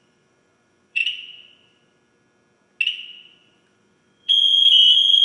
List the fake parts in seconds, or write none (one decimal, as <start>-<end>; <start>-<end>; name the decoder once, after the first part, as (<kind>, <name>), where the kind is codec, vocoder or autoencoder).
0.0-1.0 (vocoder, Vocos); 3.4-5.2